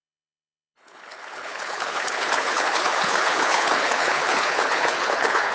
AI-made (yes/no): yes